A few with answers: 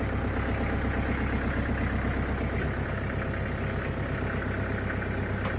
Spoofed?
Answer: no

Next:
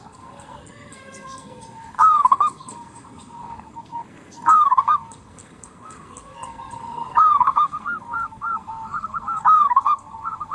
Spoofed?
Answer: yes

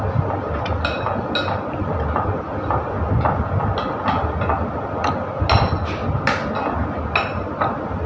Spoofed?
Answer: no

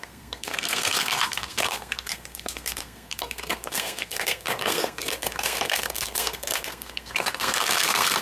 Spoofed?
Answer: yes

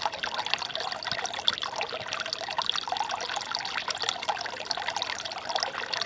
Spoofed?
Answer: no